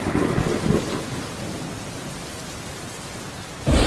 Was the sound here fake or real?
real